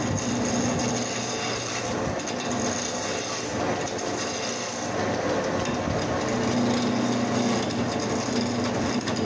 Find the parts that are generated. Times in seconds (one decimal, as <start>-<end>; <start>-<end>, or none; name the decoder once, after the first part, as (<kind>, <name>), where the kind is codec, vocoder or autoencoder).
none